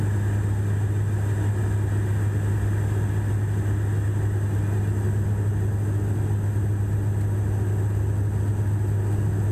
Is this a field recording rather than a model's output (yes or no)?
yes